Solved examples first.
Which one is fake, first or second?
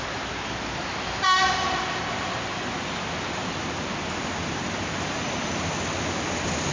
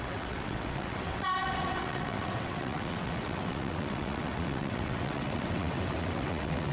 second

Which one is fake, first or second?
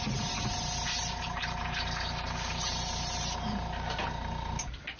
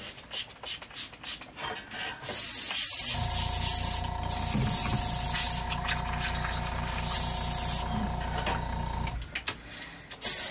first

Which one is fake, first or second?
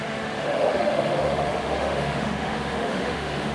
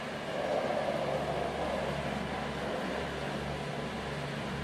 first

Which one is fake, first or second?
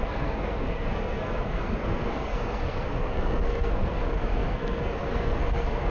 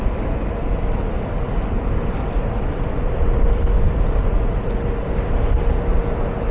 first